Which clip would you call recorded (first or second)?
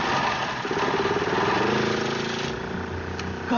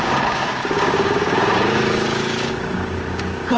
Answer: first